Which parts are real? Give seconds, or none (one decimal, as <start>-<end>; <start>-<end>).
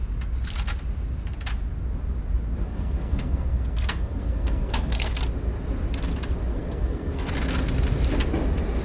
0.0-2.6; 5.2-6.5; 7.3-8.8